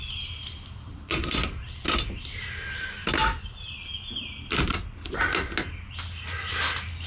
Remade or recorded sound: recorded